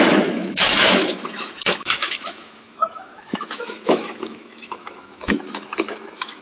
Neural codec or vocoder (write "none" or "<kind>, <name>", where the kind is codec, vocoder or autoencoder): autoencoder, DAC-VAE